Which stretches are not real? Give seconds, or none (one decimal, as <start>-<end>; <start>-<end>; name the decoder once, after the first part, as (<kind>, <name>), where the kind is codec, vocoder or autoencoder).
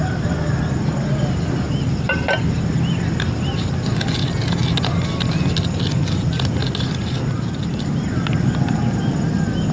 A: none